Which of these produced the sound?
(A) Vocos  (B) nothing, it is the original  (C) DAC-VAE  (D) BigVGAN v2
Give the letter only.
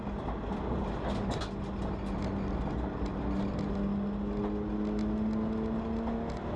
B